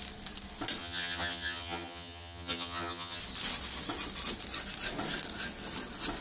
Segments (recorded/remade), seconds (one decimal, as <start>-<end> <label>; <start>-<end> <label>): 0.0-0.8 recorded; 0.8-3.2 remade; 3.2-6.2 recorded